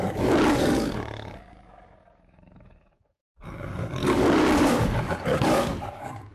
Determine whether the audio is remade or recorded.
remade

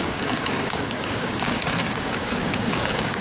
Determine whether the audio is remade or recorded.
remade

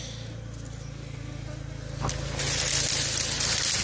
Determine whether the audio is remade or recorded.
recorded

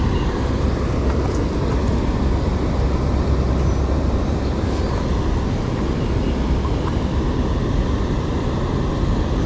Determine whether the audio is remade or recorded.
recorded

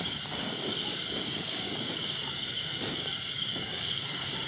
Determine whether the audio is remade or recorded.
remade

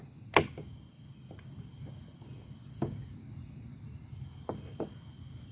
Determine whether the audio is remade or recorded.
recorded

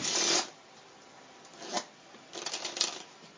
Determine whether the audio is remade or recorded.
recorded